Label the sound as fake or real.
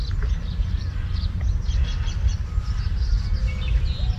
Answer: real